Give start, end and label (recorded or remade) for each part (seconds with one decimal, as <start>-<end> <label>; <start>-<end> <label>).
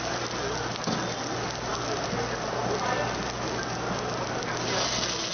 0.0-5.3 recorded